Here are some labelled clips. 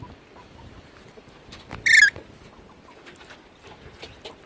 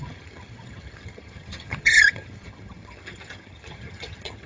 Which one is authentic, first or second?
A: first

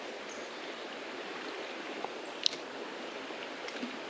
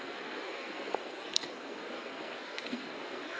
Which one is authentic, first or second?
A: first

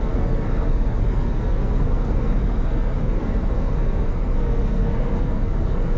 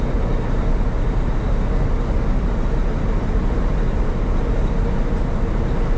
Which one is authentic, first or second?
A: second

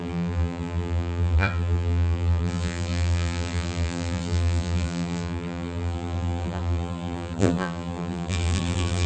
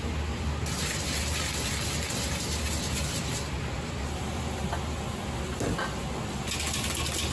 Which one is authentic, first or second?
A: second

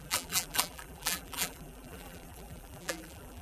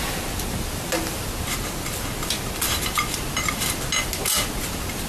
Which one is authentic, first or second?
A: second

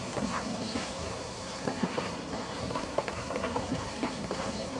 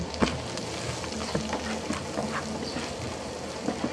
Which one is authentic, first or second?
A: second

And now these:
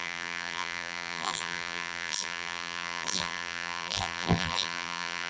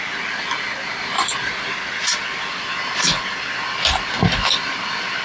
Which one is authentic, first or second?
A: second